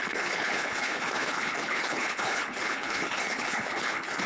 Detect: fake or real fake